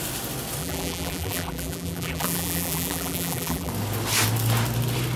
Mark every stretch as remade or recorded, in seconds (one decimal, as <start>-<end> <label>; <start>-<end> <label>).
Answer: 0.0-0.6 recorded; 0.6-3.7 remade; 3.7-5.2 recorded